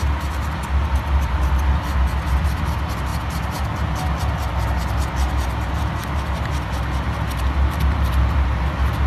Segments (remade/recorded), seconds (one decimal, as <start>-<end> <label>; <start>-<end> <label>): 0.0-9.1 recorded